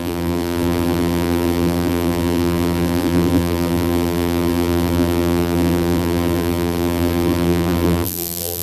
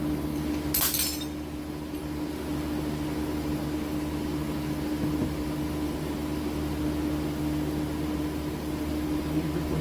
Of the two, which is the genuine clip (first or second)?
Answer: second